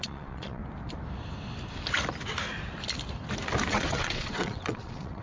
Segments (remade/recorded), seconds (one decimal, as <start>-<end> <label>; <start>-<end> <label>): 0.0-0.6 remade; 0.6-3.7 recorded; 3.7-5.2 remade